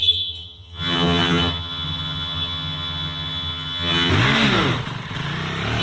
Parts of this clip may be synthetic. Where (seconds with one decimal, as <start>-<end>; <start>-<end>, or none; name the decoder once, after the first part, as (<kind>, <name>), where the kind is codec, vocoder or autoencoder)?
0.0-4.1 (vocoder, HiFi-GAN)